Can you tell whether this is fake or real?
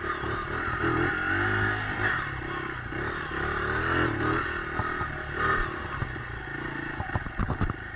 real